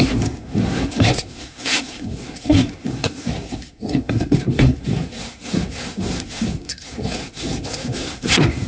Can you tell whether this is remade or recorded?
remade